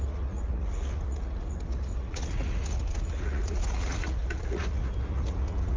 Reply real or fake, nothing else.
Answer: fake